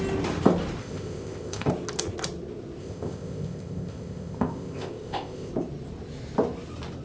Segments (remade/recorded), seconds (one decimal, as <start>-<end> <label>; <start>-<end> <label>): 0.0-0.8 recorded; 0.8-1.7 remade; 1.7-2.8 recorded; 2.8-5.5 remade; 5.5-7.0 recorded